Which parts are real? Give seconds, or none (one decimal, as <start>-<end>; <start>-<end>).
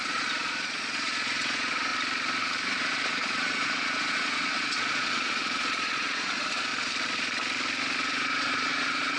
1.9-2.8; 6.7-8.1